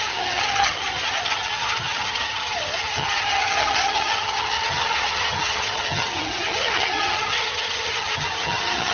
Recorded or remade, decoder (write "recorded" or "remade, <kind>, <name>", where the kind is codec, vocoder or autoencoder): remade, vocoder, HiFi-GAN